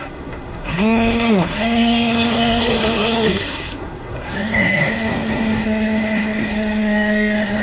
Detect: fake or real fake